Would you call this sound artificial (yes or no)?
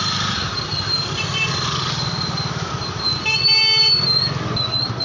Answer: no